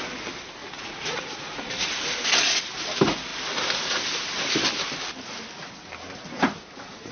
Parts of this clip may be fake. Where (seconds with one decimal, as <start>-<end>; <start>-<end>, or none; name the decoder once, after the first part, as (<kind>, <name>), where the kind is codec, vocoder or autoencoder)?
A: 0.6-1.7 (vocoder, Vocos)